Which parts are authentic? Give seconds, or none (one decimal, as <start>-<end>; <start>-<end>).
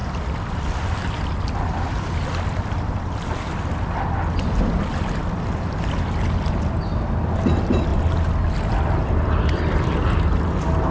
0.0-10.9